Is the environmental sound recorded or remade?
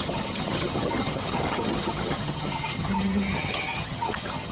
remade